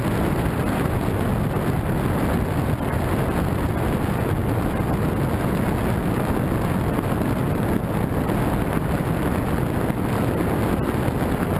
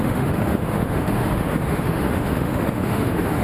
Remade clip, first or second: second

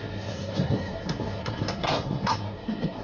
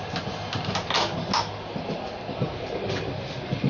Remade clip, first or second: first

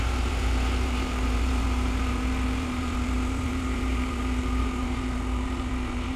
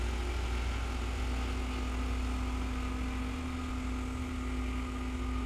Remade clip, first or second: first